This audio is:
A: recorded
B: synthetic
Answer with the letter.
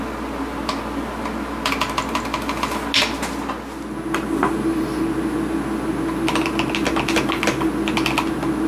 A